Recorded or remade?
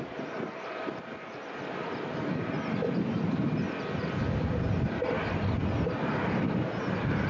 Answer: recorded